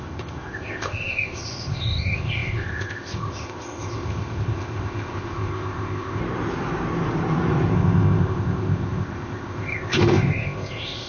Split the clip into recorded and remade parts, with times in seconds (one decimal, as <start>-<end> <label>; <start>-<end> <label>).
0.0-6.2 remade; 6.2-7.7 recorded; 7.7-11.1 remade